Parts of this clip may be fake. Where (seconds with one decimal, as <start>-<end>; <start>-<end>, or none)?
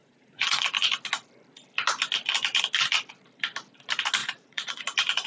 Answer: 0.0-0.7; 4.2-4.8